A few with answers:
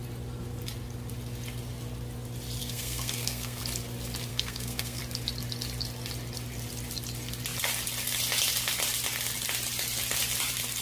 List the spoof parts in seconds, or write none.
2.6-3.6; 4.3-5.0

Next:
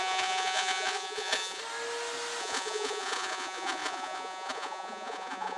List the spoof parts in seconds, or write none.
0.0-1.6; 2.4-5.6

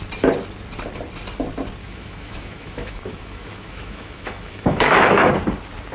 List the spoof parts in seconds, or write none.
1.8-5.3

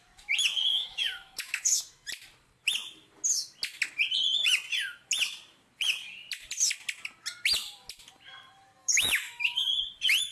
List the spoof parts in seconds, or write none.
0.7-1.8; 8.8-9.7

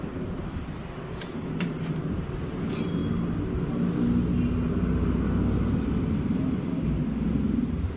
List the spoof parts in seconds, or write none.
0.0-3.0; 6.1-8.0

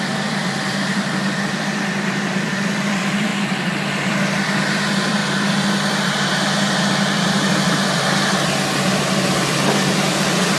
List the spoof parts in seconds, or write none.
0.0-3.3; 3.9-5.2; 8.8-10.6

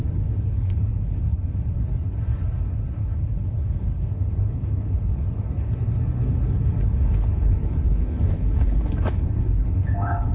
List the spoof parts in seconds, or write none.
0.0-10.3